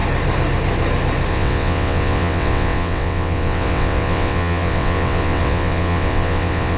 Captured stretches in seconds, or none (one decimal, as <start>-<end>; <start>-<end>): 0.0-1.3